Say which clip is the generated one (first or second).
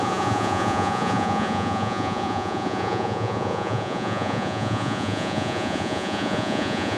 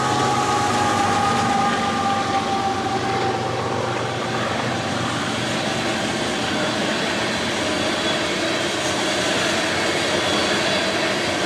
first